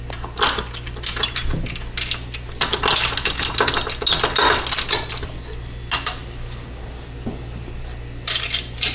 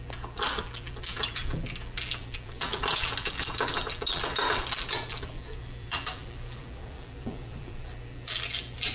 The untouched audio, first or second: first